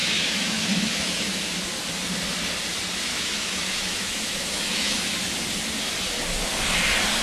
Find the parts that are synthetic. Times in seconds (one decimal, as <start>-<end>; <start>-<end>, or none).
0.0-1.6; 3.1-5.0